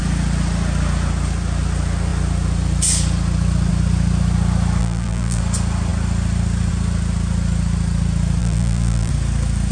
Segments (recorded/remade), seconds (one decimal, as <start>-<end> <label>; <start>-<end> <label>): 0.0-4.8 recorded; 4.8-5.4 remade; 5.4-8.4 recorded; 8.4-9.1 remade; 9.1-9.7 recorded